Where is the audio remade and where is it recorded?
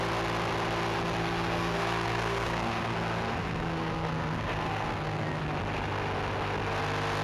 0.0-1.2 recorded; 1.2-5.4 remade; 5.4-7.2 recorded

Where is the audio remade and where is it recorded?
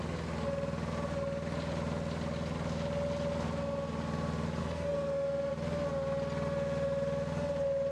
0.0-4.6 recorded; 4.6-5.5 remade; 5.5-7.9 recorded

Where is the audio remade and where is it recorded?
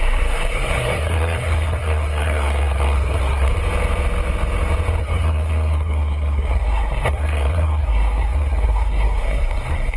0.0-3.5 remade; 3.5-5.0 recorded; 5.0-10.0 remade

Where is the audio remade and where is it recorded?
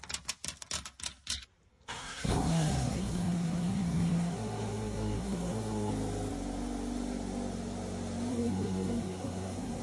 0.0-1.7 recorded; 1.7-5.9 remade; 5.9-8.3 recorded; 8.3-9.8 remade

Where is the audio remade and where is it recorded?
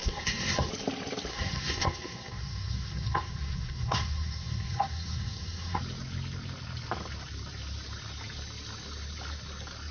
0.0-0.7 remade; 0.7-1.3 recorded; 1.3-5.8 remade; 5.8-9.9 recorded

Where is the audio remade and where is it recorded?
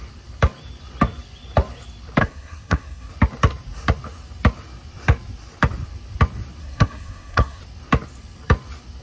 0.0-2.2 recorded; 2.2-3.1 remade; 3.1-6.6 recorded; 6.6-7.6 remade; 7.6-9.0 recorded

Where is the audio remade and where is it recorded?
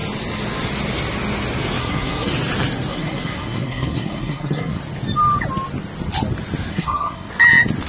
0.0-1.8 recorded; 1.8-2.3 remade; 2.3-2.9 recorded; 2.9-4.8 remade; 4.8-6.7 recorded; 6.7-7.3 remade; 7.3-7.9 recorded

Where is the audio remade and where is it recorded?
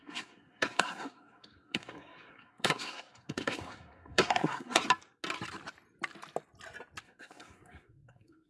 0.0-4.8 remade; 4.8-7.0 recorded; 7.0-8.5 remade